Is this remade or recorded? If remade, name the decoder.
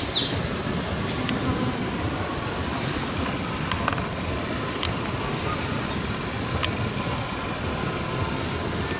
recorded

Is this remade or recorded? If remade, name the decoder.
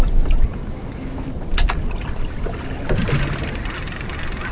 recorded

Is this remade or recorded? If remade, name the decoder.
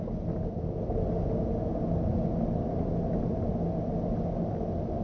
recorded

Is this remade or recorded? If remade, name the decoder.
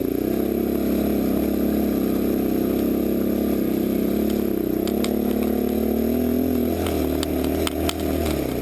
recorded